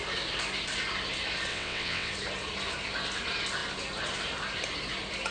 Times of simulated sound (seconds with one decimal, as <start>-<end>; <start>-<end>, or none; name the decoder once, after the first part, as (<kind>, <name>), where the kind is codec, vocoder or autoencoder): 1.5-2.1 (vocoder, WaveNeXt)